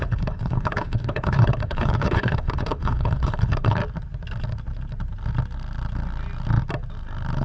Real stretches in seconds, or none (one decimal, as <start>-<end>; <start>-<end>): 3.8-7.4